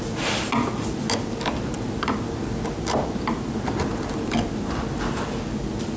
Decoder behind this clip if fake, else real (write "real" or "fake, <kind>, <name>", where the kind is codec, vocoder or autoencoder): real